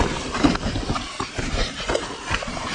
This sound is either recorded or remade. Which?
recorded